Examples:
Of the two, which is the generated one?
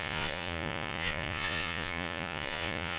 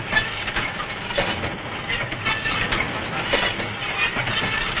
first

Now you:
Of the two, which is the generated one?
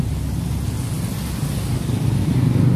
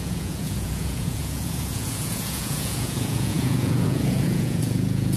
second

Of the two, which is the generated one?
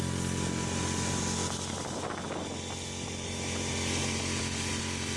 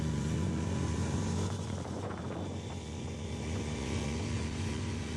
second